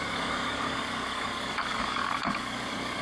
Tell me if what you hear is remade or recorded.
remade